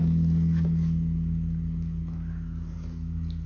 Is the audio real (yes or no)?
yes